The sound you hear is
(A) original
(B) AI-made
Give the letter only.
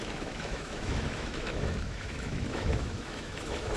B